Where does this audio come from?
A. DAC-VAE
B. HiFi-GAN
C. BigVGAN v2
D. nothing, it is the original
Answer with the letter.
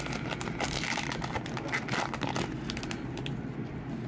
D